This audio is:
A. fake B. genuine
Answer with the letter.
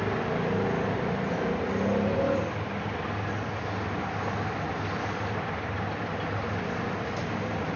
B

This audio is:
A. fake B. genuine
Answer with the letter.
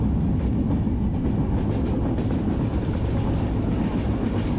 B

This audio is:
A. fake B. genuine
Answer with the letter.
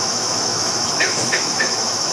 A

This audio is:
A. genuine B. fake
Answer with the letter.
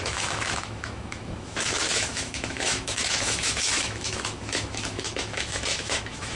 B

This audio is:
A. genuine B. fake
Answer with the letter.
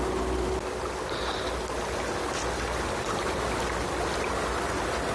A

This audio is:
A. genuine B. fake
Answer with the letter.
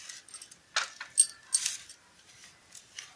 A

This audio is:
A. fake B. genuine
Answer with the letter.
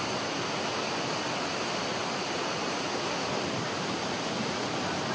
B